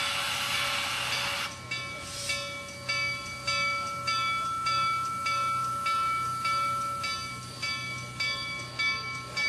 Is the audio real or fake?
real